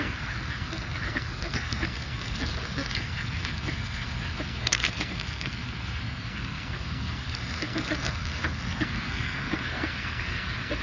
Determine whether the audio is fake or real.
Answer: fake